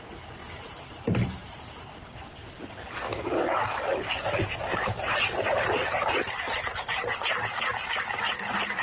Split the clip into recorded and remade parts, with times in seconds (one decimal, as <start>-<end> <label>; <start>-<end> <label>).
0.0-0.4 recorded; 0.4-1.7 remade; 1.7-4.7 recorded; 4.7-7.6 remade; 7.6-8.8 recorded